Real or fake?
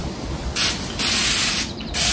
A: real